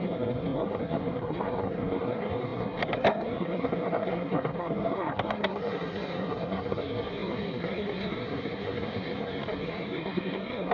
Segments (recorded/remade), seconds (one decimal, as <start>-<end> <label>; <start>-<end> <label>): 0.0-10.7 remade